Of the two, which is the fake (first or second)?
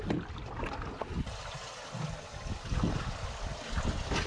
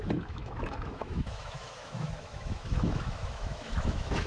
second